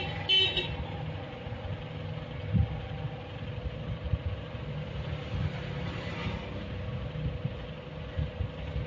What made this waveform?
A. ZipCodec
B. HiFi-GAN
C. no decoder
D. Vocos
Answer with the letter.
C